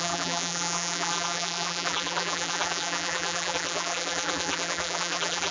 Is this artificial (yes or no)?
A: yes